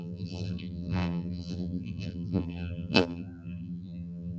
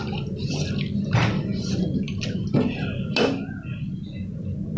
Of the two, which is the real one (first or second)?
second